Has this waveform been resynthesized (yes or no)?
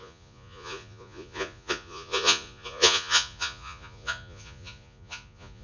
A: yes